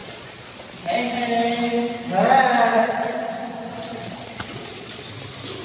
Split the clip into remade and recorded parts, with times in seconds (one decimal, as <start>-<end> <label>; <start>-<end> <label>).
0.0-0.6 remade; 0.6-2.7 recorded; 2.7-3.3 remade; 3.3-3.9 recorded; 3.9-5.1 remade; 5.1-5.6 recorded